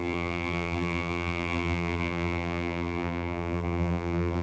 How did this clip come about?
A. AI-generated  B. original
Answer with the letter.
A